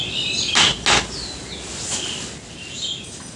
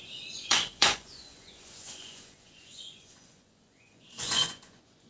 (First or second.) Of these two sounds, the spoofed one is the second